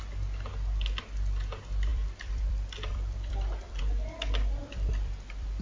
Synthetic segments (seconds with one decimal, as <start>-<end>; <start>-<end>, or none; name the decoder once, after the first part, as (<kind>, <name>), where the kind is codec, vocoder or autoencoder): 1.9-3.8 (vocoder, BigVGAN v2); 4.6-5.6